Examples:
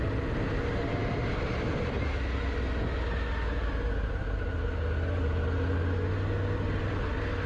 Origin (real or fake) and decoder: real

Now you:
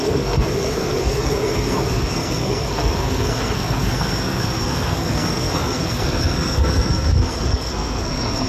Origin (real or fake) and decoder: fake, codec, SNAC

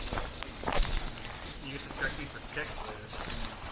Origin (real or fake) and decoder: real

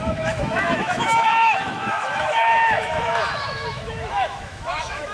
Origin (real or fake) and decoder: fake, autoencoder, DAC-VAE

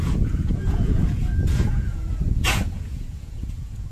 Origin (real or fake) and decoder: fake, vocoder, Vocos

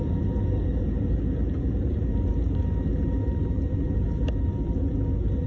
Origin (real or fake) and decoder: real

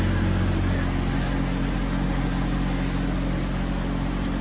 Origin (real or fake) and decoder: real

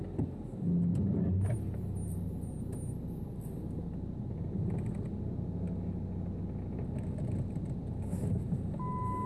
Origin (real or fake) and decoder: real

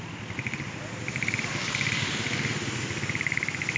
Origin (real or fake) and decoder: fake, vocoder, BigVGAN v2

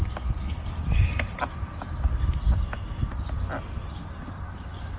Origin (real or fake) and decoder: real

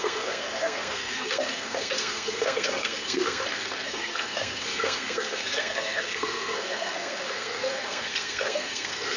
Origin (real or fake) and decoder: fake, codec, SNAC